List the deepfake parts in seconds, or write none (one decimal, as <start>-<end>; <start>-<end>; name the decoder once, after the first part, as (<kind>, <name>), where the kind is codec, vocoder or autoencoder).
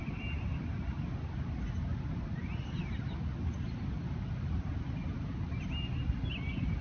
none